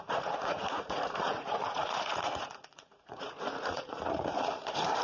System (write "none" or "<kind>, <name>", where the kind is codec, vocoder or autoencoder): vocoder, Vocos